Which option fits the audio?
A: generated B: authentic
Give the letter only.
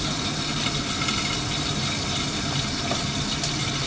B